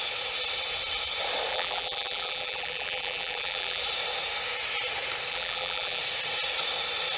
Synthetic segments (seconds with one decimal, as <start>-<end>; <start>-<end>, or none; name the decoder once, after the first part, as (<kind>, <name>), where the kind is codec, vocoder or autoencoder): 1.5-3.8 (vocoder, BigVGAN v2); 5.3-6.0